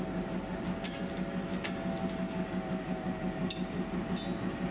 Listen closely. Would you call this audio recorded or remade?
recorded